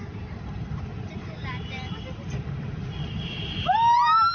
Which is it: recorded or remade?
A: recorded